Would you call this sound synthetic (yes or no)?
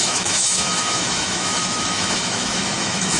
yes